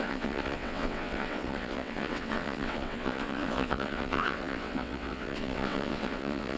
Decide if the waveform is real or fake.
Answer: fake